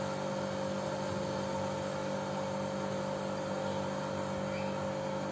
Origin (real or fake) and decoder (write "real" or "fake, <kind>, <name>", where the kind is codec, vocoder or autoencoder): real